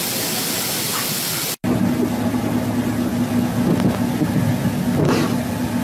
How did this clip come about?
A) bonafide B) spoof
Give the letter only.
A